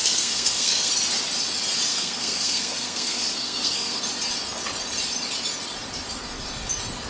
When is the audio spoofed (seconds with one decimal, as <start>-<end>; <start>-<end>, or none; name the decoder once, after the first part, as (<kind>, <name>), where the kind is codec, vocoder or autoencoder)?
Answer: 0.0-0.9 (codec, SNAC); 1.9-4.0